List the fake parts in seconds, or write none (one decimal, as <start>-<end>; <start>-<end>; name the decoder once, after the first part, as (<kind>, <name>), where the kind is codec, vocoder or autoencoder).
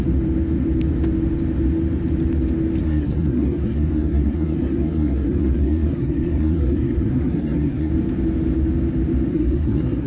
2.8-7.9 (codec, SNAC); 9.3-10.1